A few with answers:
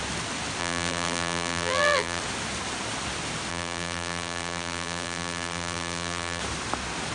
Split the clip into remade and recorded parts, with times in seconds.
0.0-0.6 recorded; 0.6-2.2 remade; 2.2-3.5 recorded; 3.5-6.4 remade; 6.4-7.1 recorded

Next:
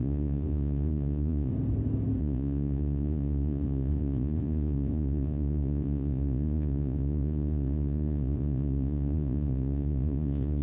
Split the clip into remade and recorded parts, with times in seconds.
0.0-1.5 remade; 1.5-2.2 recorded; 2.2-10.6 remade

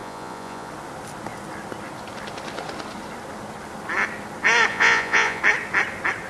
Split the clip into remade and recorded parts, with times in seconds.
0.0-0.7 remade; 0.7-4.7 recorded; 4.7-5.4 remade; 5.4-6.3 recorded

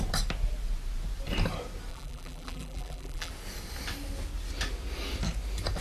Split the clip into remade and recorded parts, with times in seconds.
0.0-1.9 recorded; 1.9-3.3 remade; 3.3-5.8 recorded